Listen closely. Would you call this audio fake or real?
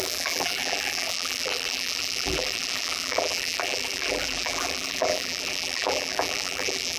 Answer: fake